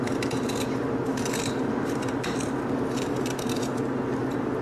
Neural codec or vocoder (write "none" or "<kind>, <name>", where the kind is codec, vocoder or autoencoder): none